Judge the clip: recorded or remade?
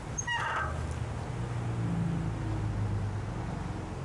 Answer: recorded